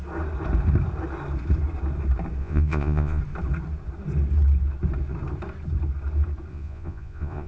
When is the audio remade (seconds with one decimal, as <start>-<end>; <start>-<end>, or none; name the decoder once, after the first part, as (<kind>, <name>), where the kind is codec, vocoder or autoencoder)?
2.4-3.2 (vocoder, Vocos); 6.5-7.5